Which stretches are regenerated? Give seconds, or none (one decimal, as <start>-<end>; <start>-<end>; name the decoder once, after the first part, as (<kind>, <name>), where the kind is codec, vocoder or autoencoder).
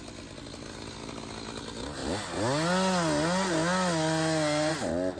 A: none